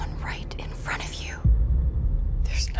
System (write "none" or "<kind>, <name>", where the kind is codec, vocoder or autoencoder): none